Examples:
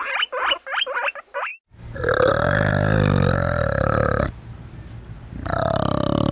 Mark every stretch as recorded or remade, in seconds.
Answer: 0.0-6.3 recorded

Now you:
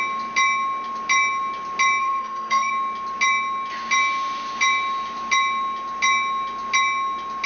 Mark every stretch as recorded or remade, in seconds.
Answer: 0.0-2.0 recorded; 2.0-2.7 remade; 2.7-7.5 recorded

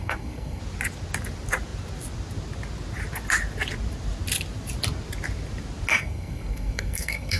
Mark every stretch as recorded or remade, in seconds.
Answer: 0.0-0.6 remade; 0.6-5.9 recorded; 5.9-7.4 remade

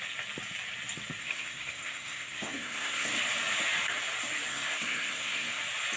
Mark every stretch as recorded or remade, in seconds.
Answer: 0.0-1.2 recorded; 1.2-3.1 remade; 3.1-4.5 recorded; 4.5-5.6 remade; 5.6-6.0 recorded

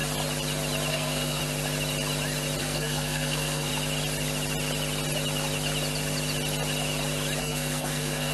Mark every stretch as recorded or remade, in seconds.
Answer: 0.0-0.9 recorded; 0.9-1.4 remade; 1.4-2.6 recorded; 2.6-3.7 remade; 3.7-7.4 recorded; 7.4-8.3 remade

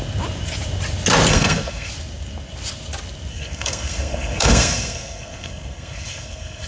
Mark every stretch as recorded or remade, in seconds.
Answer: 0.0-1.3 recorded; 1.3-1.9 remade; 1.9-3.3 recorded; 3.3-6.7 remade

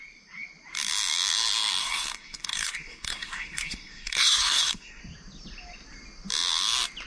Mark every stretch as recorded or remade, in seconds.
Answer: 0.0-1.8 recorded; 1.8-5.0 remade; 5.0-7.1 recorded

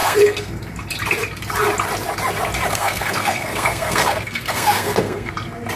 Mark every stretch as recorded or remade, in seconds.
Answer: 0.0-0.6 remade; 0.6-2.7 recorded; 2.7-5.3 remade; 5.3-5.8 recorded